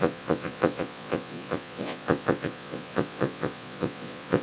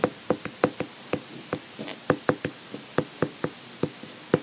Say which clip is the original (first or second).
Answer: second